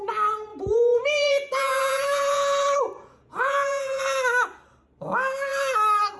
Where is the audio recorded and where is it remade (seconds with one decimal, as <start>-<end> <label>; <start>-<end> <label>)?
0.0-0.5 recorded; 0.5-4.0 remade; 4.0-6.2 recorded